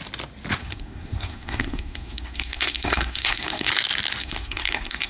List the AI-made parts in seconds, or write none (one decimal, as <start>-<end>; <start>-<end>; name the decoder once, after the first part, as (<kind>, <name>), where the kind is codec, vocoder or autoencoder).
0.6-3.7 (codec, SNAC); 4.2-5.1